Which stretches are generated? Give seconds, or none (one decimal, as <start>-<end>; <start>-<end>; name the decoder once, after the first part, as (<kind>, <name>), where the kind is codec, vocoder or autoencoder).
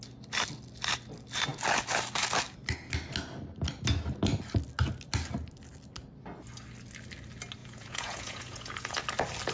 7.6-9.0 (vocoder, Vocos)